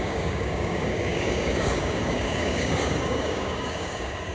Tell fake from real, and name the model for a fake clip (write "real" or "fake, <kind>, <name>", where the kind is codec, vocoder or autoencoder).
fake, codec, DAC